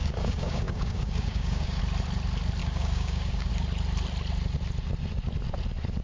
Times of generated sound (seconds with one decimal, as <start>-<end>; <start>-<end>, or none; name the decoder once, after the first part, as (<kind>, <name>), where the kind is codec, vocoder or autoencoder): 0.0-1.8 (codec, DAC); 2.6-3.5